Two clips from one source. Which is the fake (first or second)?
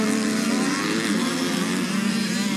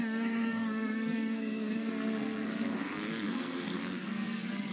second